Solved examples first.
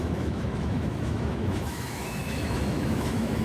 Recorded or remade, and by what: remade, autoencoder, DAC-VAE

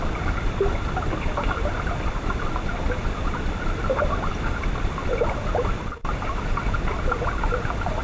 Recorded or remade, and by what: recorded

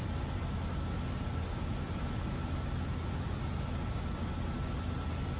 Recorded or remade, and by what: recorded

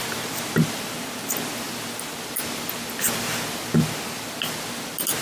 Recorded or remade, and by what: recorded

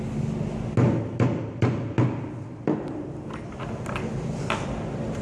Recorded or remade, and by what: recorded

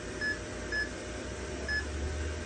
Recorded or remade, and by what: recorded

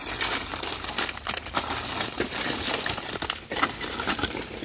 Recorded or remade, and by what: recorded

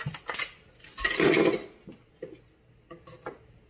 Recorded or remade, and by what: recorded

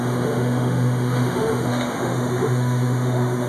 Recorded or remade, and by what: remade, autoencoder, DAC-VAE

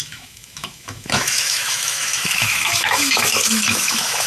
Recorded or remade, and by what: remade, autoencoder, DAC-VAE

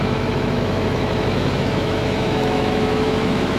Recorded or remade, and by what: remade, autoencoder, DAC-VAE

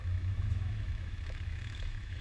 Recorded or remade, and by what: remade, autoencoder, DAC-VAE